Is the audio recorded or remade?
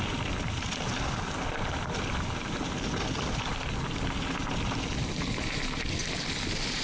recorded